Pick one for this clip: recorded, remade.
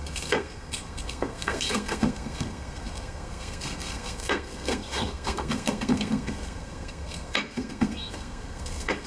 remade